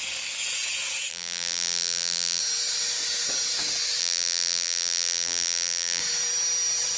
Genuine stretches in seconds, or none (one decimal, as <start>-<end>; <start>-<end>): 0.0-1.1; 2.4-4.0; 6.0-7.0